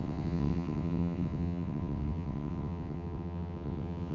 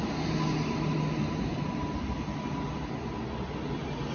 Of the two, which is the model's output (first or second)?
first